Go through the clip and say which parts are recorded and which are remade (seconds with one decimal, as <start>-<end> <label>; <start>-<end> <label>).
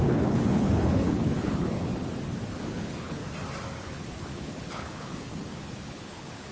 0.0-1.9 remade; 1.9-2.5 recorded; 2.5-3.2 remade; 3.2-3.8 recorded; 3.8-6.5 remade